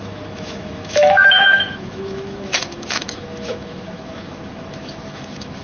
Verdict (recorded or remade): remade